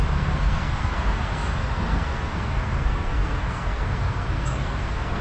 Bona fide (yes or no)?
no